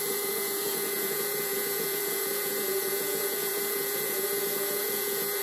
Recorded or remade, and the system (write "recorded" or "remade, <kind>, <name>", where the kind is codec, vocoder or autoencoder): remade, vocoder, Vocos